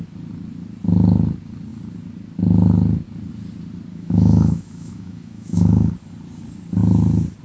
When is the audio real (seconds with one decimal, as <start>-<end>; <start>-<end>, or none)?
0.0-3.9; 5.9-7.4